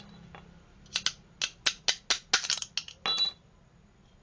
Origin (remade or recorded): recorded